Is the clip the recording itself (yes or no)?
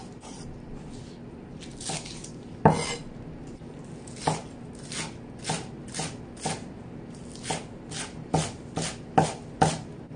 yes